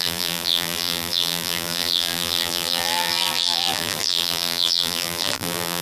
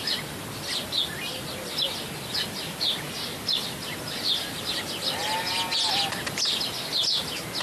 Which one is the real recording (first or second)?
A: second